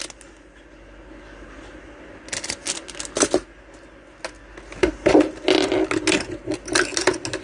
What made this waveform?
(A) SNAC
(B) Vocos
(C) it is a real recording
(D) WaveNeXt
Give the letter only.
C